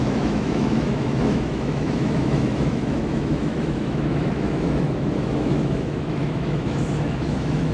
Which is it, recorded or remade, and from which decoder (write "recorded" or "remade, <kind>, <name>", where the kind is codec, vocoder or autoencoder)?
remade, autoencoder, DAC-VAE